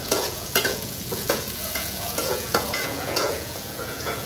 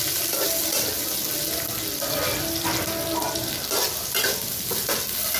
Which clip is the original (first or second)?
second